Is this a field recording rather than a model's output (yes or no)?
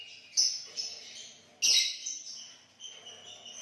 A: yes